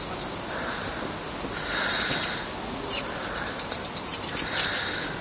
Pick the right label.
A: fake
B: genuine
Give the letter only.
B